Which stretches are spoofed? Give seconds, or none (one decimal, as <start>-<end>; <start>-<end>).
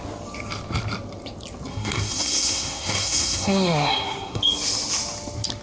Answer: 1.7-4.4